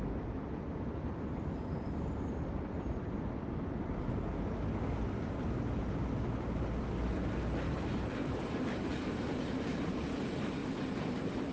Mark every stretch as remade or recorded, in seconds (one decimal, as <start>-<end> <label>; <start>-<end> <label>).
0.0-11.5 recorded